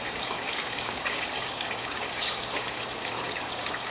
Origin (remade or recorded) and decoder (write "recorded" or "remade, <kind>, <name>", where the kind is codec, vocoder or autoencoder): remade, codec, DAC